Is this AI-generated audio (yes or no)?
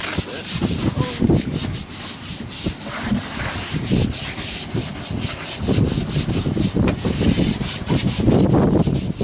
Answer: no